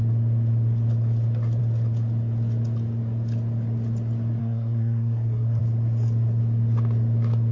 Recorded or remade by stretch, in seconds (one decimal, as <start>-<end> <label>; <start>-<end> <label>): 0.0-4.4 recorded; 4.4-5.6 remade; 5.6-7.5 recorded